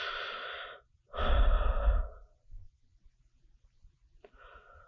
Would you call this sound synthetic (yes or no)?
no